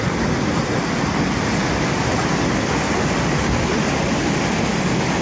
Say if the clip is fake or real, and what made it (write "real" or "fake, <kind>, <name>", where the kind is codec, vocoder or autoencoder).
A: real